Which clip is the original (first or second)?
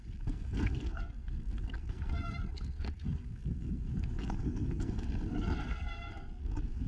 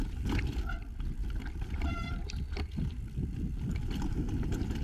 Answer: second